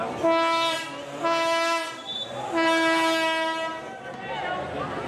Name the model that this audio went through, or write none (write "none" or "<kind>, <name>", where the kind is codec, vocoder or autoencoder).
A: none